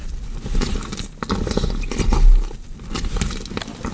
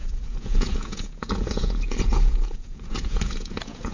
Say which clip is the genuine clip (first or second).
first